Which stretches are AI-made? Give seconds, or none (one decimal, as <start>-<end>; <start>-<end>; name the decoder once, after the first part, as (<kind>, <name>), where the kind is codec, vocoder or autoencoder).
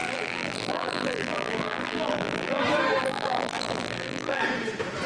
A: 0.0-2.6 (vocoder, BigVGAN v2); 3.0-4.4